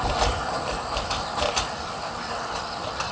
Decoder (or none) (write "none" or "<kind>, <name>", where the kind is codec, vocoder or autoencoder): none